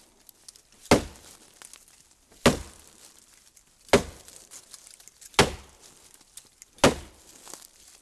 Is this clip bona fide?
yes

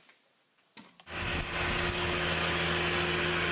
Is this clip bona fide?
yes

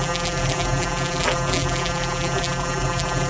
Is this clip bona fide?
no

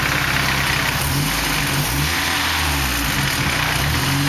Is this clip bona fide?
yes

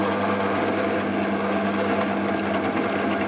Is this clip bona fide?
yes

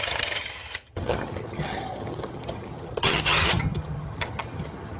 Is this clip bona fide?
no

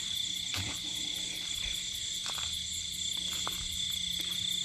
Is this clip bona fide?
no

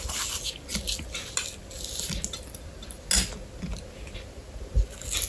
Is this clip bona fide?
yes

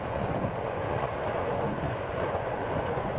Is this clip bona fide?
no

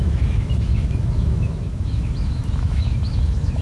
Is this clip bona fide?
no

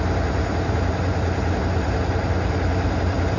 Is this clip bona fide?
yes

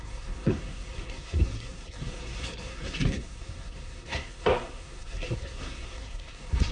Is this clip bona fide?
no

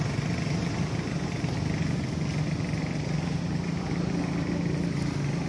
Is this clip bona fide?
yes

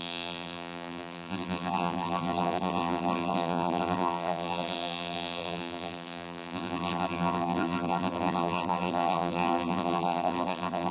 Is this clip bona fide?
no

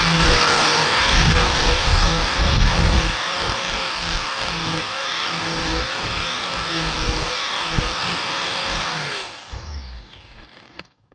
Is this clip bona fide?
no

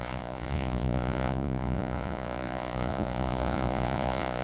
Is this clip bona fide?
no